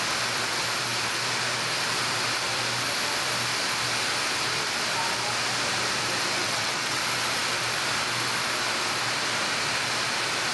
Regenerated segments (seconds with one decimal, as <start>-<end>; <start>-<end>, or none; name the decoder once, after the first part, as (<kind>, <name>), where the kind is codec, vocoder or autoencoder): 6.4-7.0 (vocoder, WaveNeXt)